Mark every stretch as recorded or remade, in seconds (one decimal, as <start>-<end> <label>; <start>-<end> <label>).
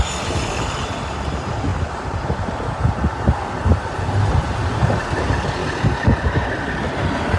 0.0-1.7 recorded; 1.7-2.2 remade; 2.2-3.7 recorded; 3.7-5.0 remade; 5.0-7.4 recorded